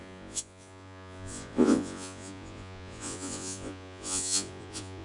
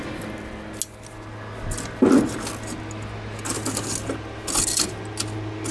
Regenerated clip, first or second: first